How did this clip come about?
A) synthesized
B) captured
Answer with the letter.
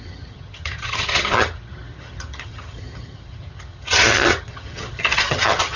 A